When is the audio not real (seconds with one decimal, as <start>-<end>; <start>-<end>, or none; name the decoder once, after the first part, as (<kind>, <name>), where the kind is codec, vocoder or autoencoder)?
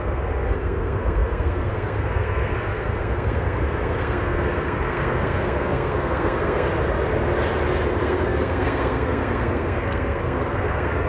0.0-6.7 (codec, SNAC); 8.0-11.1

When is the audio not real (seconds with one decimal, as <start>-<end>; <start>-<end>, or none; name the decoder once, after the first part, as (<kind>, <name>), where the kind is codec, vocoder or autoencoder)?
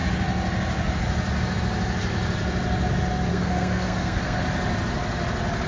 3.3-4.4 (codec, SNAC)